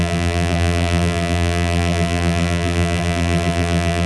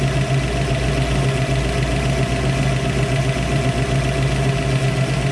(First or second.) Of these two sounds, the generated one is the first